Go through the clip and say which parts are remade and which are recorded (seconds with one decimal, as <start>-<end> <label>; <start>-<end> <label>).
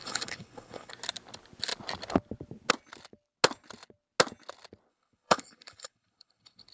0.0-0.9 remade; 0.9-4.9 recorded; 4.9-6.7 remade